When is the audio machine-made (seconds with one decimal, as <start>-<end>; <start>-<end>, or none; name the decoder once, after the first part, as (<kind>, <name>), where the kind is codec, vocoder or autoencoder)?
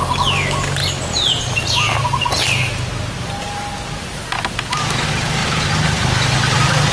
none